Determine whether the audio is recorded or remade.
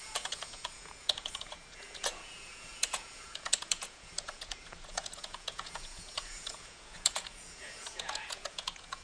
remade